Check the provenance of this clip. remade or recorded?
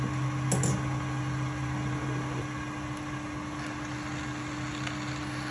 recorded